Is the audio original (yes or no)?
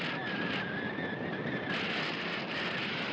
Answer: yes